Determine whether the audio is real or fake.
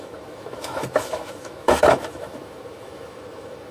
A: fake